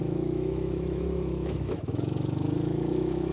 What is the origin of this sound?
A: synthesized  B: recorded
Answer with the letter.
A